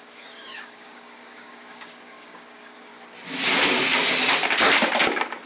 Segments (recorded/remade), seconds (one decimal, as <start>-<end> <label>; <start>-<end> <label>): 0.0-2.9 remade; 2.9-5.5 recorded